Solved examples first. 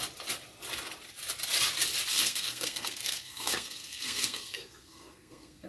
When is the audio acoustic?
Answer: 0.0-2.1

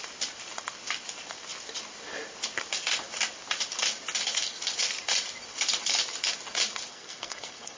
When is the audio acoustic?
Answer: 0.0-6.9